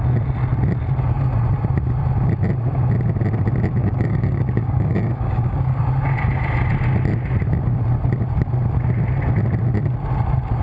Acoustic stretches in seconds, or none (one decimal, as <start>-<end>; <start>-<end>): 0.0-3.8; 5.8-10.6